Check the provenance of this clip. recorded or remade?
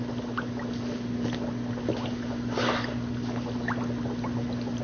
recorded